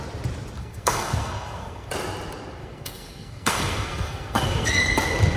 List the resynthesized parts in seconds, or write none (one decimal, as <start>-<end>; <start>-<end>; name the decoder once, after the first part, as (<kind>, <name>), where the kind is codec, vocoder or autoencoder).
0.6-1.9 (codec, SNAC); 2.6-4.8